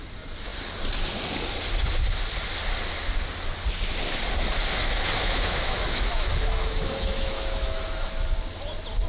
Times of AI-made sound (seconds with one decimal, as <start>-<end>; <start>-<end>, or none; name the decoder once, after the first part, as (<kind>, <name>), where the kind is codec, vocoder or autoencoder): 4.8-8.1 (autoencoder, DAC-VAE)